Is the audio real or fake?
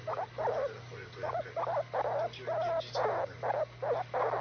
real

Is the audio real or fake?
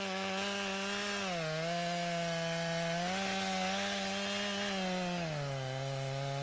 real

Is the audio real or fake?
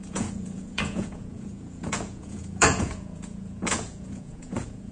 fake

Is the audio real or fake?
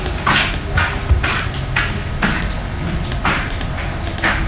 real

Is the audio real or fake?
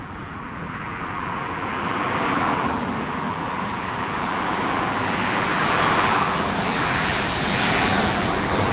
fake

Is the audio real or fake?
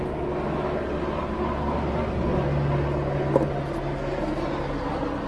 real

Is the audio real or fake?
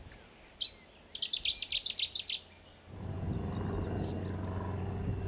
real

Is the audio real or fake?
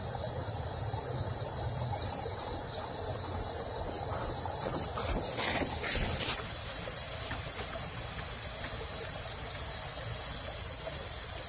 real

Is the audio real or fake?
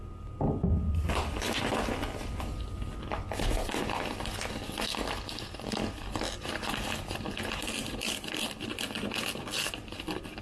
real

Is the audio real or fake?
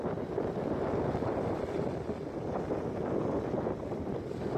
real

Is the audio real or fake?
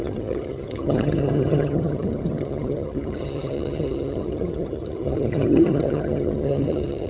fake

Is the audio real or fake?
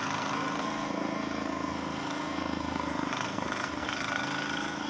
fake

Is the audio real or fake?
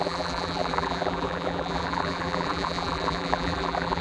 fake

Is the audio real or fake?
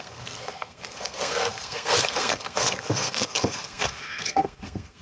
fake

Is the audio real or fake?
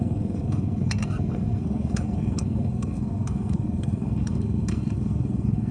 fake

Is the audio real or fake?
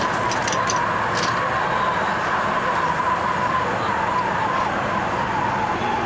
real